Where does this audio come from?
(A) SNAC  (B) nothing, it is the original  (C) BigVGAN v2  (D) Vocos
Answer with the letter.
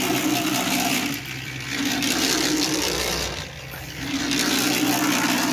B